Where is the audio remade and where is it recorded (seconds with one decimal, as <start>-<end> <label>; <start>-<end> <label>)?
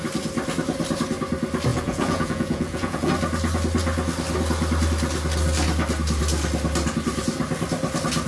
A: 0.0-1.7 recorded; 1.7-3.1 remade; 3.1-8.3 recorded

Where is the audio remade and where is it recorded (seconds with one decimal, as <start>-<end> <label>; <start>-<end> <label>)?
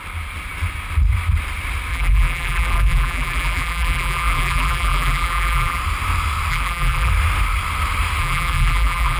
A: 0.0-1.9 recorded; 1.9-5.8 remade; 5.8-6.5 recorded; 6.5-7.1 remade; 7.1-8.2 recorded; 8.2-9.2 remade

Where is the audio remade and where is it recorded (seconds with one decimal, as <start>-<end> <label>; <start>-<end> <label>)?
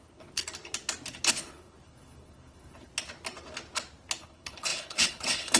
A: 0.0-0.4 remade; 0.4-1.3 recorded; 1.3-2.9 remade; 2.9-4.2 recorded; 4.2-5.6 remade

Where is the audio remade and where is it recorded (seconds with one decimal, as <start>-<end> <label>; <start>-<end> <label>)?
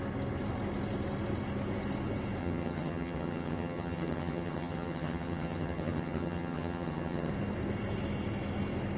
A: 0.0-2.4 recorded; 2.4-7.3 remade; 7.3-9.0 recorded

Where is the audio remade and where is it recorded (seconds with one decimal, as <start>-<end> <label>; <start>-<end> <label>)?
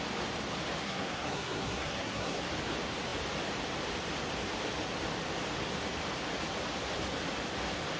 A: 0.0-0.8 recorded; 0.8-2.4 remade; 2.4-8.0 recorded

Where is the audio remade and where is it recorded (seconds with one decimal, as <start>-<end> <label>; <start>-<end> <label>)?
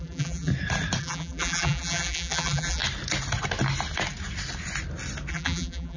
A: 0.0-0.5 remade; 0.5-1.0 recorded; 1.0-2.8 remade; 2.8-5.3 recorded; 5.3-6.0 remade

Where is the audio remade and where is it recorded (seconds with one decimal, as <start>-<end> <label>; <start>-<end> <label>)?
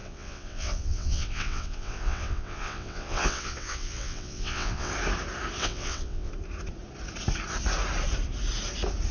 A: 0.0-4.9 remade; 4.9-5.6 recorded; 5.6-6.3 remade; 6.3-9.1 recorded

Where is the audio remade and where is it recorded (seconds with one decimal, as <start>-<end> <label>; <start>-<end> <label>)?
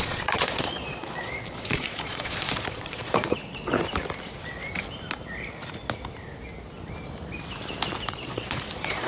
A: 0.0-3.4 remade; 3.4-8.1 recorded; 8.1-9.1 remade